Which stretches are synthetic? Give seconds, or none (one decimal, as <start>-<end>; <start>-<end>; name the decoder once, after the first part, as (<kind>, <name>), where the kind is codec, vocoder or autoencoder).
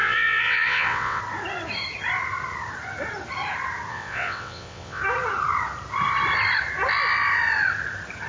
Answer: 0.0-1.2 (vocoder, WaveNeXt); 3.9-5.0